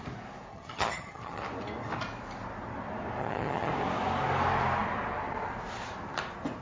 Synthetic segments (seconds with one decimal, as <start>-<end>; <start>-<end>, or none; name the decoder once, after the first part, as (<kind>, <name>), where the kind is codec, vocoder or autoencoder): 0.5-1.4 (vocoder, HiFi-GAN); 3.2-3.7